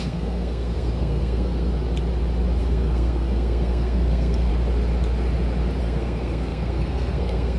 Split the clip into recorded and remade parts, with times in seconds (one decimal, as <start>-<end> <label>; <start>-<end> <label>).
0.0-1.7 remade; 1.7-2.6 recorded; 2.6-4.5 remade; 4.5-5.8 recorded; 5.8-7.6 remade